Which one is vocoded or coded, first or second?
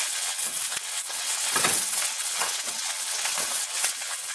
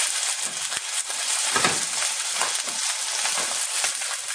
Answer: first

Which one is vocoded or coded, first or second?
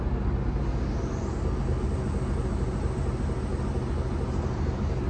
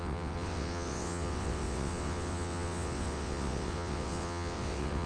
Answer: second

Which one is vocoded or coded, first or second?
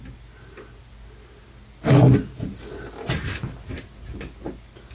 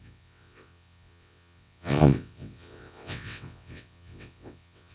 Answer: second